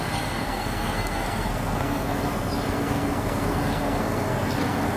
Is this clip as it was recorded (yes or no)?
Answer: no